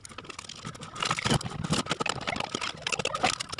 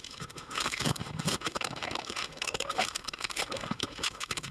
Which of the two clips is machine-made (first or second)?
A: second